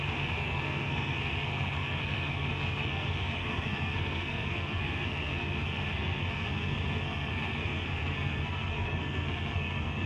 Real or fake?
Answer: fake